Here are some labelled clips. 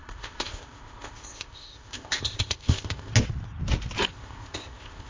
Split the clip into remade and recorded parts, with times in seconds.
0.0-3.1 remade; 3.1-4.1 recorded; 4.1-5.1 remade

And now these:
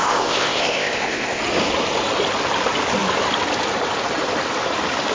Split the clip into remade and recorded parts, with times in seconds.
0.0-1.4 remade; 1.4-5.1 recorded

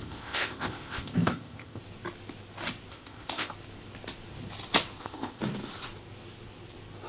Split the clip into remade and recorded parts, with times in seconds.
0.0-1.8 remade; 1.8-2.9 recorded; 2.9-3.5 remade; 3.5-5.0 recorded; 5.0-5.4 remade; 5.4-7.1 recorded

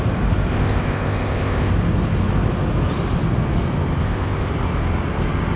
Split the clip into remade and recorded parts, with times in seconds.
0.0-0.5 recorded; 0.5-1.7 remade; 1.7-4.0 recorded; 4.0-4.5 remade; 4.5-5.6 recorded

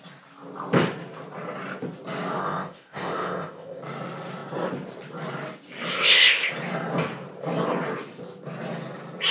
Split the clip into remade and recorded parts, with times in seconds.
0.0-2.4 recorded; 2.4-3.8 remade; 3.8-5.9 recorded; 5.9-6.5 remade; 6.5-9.3 recorded

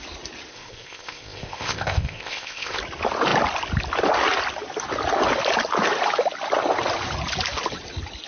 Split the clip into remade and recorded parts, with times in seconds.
0.0-0.5 recorded; 0.5-2.8 remade; 2.8-8.3 recorded